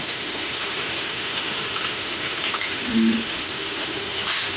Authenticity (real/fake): fake